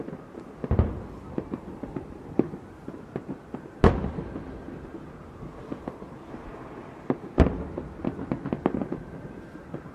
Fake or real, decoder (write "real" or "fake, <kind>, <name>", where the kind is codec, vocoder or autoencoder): real